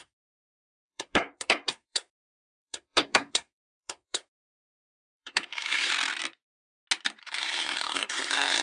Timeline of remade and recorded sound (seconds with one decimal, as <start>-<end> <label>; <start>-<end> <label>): 0.0-5.9 remade; 5.9-7.2 recorded; 7.2-8.6 remade